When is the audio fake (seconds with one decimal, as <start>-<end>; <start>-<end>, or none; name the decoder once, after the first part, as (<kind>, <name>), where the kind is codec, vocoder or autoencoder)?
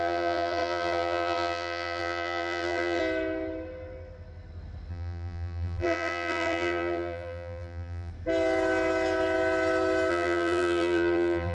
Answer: 0.0-3.0 (vocoder, BigVGAN v2); 4.9-8.1; 10.1-11.5